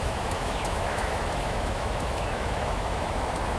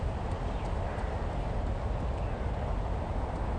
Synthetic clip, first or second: first